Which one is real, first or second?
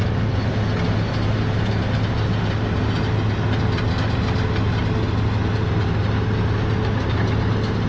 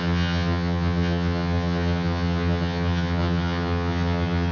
first